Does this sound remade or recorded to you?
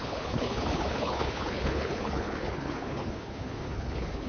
remade